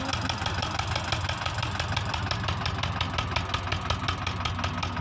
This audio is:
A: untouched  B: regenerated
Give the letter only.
A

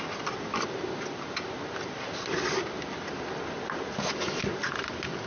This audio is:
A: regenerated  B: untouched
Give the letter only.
B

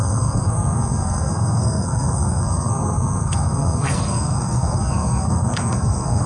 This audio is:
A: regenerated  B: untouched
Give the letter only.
A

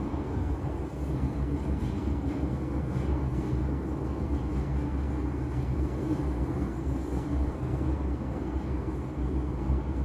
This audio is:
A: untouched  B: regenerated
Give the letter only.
B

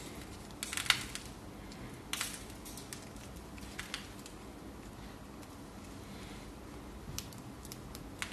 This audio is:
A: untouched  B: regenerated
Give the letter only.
A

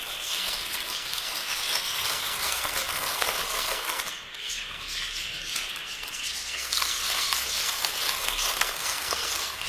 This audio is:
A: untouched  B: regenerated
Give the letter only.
B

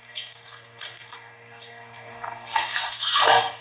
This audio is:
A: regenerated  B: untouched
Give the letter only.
A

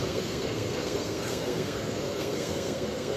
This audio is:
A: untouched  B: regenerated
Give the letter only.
B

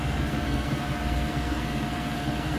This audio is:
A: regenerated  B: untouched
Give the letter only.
A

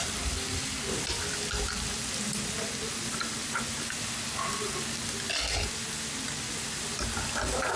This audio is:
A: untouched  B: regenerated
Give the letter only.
A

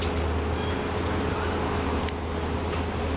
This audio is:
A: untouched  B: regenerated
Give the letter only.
A